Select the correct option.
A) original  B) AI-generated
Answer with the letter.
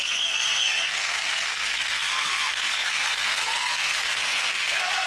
B